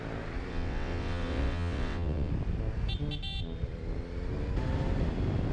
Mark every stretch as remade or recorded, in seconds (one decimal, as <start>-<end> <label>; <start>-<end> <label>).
0.0-0.5 recorded; 0.5-2.3 remade; 2.3-5.5 recorded